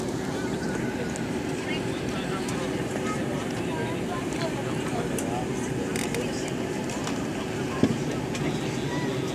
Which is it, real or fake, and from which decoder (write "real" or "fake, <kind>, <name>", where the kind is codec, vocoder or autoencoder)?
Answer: real